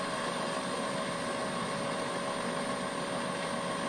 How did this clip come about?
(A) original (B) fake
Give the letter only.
A